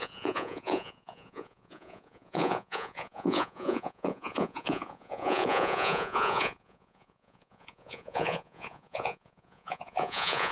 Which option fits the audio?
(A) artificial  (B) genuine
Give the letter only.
A